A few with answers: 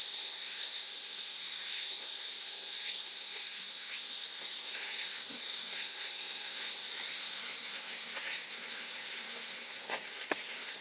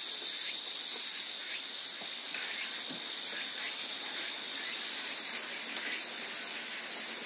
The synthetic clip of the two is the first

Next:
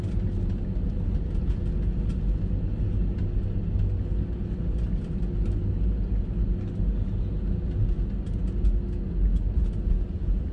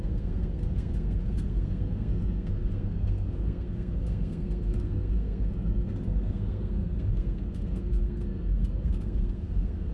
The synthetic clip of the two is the second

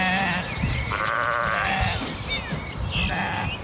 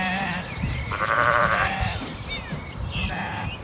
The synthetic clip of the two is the second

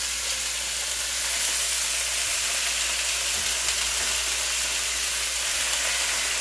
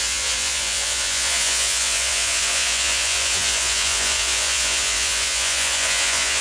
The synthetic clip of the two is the second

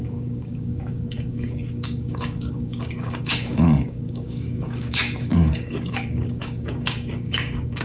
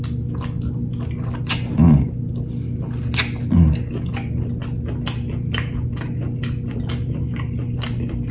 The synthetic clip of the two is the first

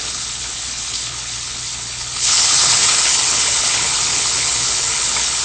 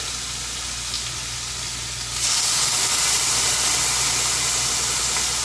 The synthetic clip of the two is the first